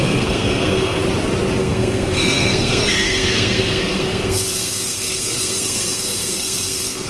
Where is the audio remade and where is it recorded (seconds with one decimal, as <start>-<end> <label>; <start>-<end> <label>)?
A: 0.0-1.0 remade; 1.0-1.6 recorded; 1.6-7.1 remade